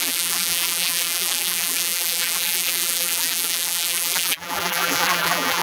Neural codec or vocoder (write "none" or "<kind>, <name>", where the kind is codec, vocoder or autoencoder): vocoder, BigVGAN v2